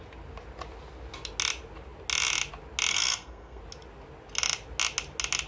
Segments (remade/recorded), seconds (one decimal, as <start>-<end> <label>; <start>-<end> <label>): 0.0-2.9 recorded; 2.9-3.6 remade; 3.6-5.5 recorded